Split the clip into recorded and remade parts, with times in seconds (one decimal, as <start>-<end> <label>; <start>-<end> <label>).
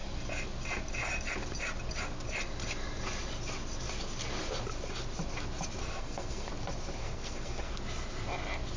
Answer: 0.0-5.8 recorded; 5.8-6.5 remade; 6.5-7.0 recorded; 7.0-7.7 remade; 7.7-8.8 recorded